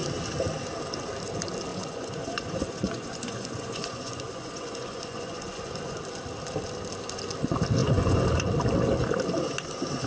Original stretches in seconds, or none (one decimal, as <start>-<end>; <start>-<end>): 0.0-1.7; 6.0-7.8; 8.5-10.1